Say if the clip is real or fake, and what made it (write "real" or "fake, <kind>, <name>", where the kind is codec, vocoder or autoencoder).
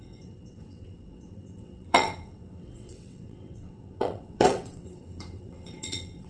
fake, vocoder, WaveNeXt